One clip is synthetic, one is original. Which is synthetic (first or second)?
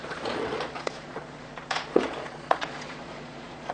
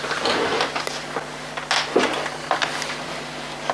first